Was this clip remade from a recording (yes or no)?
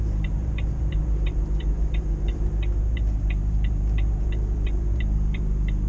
yes